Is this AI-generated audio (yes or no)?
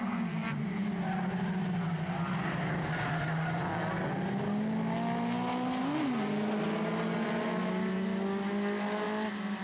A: no